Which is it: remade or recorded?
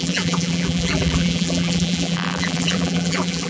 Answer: remade